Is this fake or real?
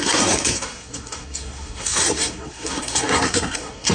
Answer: fake